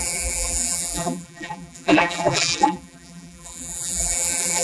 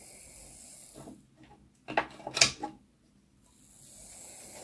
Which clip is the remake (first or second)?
first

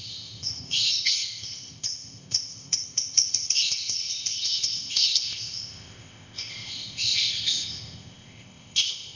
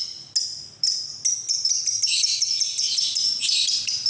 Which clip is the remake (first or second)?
first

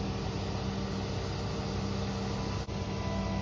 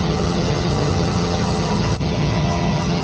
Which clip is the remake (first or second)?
second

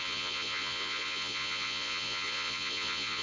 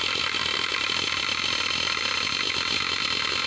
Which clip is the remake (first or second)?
first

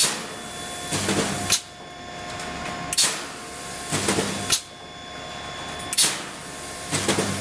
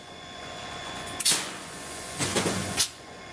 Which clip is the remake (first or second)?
second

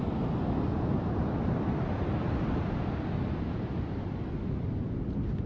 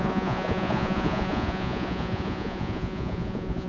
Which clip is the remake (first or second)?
second